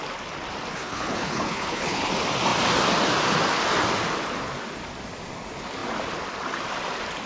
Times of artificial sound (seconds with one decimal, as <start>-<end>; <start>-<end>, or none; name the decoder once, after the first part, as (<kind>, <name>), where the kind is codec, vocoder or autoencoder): 0.7-2.1 (codec, HILCodec)